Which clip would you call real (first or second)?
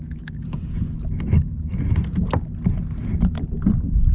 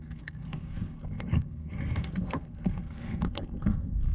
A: first